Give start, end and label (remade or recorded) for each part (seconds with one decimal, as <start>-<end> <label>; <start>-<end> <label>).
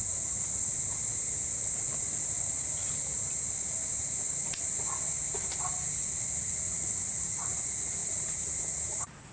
0.0-0.7 remade; 0.7-2.4 recorded; 2.4-2.8 remade; 2.8-6.4 recorded; 6.4-9.3 remade